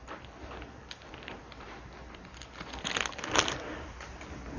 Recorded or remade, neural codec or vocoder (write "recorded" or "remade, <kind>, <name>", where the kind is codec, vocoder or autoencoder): recorded